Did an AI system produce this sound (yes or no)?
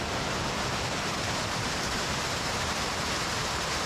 yes